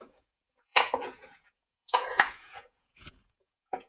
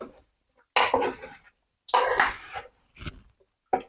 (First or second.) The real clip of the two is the second